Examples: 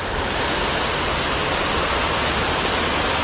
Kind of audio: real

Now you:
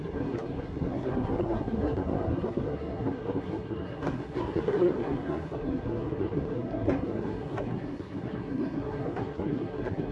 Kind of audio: fake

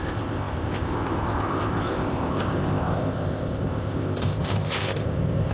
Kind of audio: fake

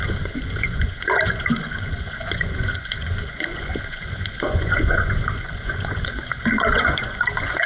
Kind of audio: fake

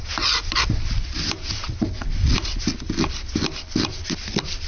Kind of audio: real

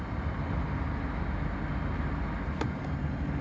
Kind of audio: real